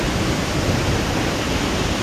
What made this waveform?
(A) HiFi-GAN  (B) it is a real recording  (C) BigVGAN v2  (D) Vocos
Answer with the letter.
B